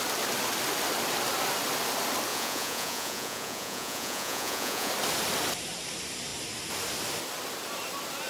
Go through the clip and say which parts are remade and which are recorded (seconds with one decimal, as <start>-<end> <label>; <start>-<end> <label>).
0.0-2.3 recorded; 2.3-4.9 remade; 4.9-8.3 recorded